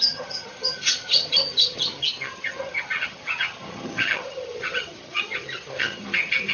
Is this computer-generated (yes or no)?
yes